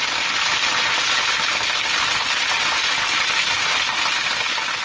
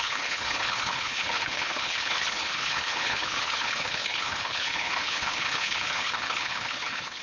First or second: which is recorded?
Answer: first